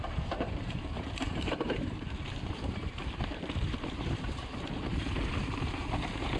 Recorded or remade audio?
remade